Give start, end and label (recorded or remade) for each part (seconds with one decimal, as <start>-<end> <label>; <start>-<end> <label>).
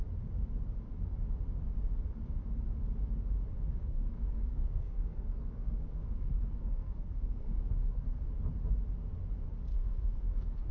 0.0-3.8 recorded; 3.8-8.2 remade; 8.2-9.7 recorded; 9.7-10.7 remade